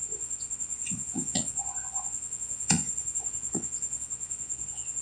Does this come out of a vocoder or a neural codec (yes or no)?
yes